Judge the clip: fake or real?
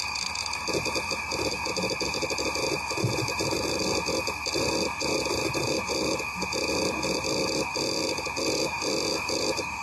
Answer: real